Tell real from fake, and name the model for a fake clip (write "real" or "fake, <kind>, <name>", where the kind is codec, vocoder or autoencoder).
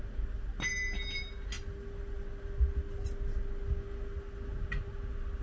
real